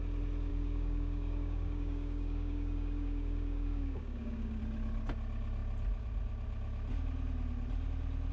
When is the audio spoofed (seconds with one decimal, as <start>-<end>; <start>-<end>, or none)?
0.5-4.6